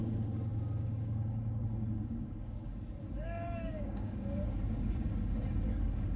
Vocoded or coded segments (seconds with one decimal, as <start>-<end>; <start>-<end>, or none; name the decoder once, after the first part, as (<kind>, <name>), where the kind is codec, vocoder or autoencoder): 0.0-6.2 (codec, DAC)